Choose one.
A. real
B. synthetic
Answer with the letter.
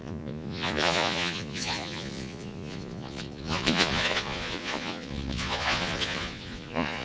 B